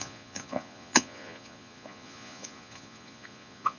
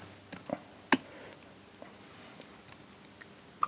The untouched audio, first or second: second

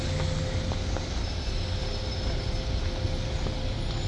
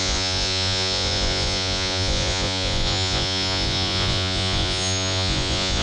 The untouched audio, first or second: first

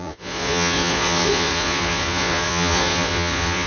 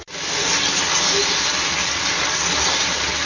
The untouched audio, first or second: second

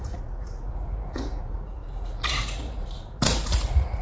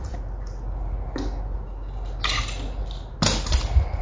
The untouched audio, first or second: second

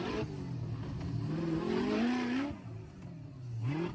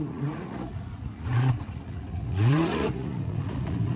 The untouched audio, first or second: first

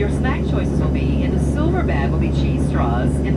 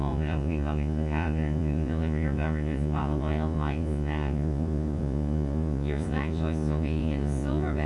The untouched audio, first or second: first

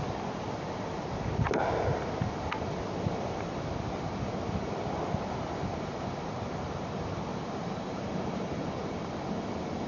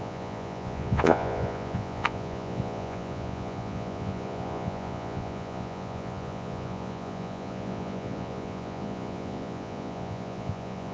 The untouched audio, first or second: first